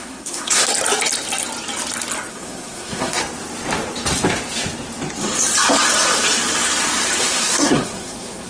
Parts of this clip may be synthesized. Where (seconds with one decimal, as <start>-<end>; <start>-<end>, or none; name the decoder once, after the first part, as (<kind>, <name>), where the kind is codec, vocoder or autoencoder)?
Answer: 0.0-0.7 (codec, SNAC); 2.3-3.2; 7.2-8.5